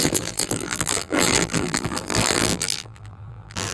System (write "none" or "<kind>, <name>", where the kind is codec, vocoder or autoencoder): vocoder, BigVGAN v2